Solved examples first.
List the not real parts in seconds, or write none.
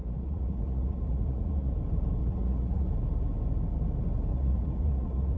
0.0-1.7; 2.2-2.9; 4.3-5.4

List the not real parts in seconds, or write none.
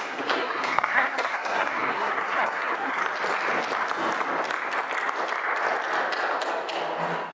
0.0-3.0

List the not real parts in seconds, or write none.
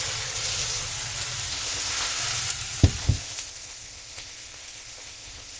1.5-2.2; 3.0-5.6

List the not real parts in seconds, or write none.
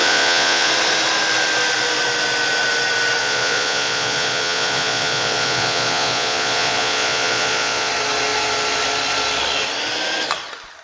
0.0-0.7; 3.2-7.9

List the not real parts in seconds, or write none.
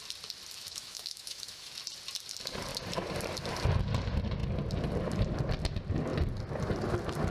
0.6-1.7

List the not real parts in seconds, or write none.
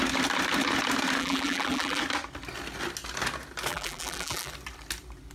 1.2-2.0; 3.7-4.5